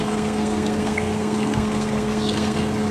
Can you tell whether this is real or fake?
fake